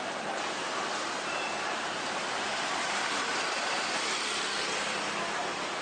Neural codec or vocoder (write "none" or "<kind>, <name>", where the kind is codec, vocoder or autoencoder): none